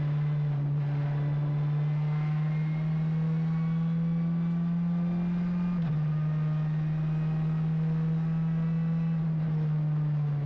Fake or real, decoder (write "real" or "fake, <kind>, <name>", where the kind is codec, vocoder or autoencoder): real